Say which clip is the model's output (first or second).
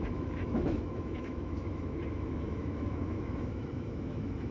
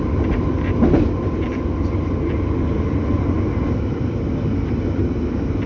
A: first